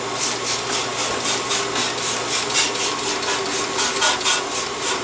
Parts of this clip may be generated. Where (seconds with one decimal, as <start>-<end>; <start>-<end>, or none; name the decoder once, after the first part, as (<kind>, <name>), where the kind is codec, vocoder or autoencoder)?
none